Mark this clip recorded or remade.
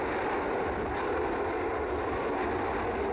recorded